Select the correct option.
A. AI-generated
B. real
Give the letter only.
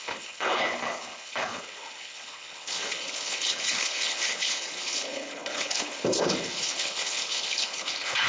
A